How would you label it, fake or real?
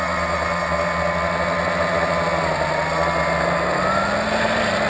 real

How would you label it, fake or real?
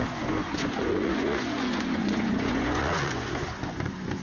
fake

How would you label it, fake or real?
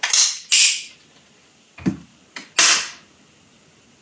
real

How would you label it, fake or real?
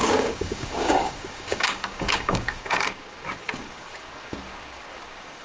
fake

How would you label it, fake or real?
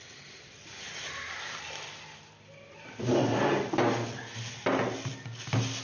real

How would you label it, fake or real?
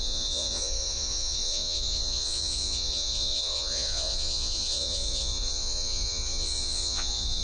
fake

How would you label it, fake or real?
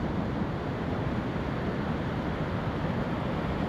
real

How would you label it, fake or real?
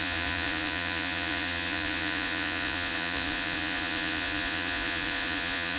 fake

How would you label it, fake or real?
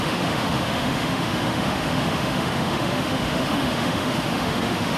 fake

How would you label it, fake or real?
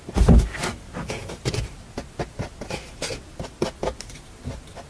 real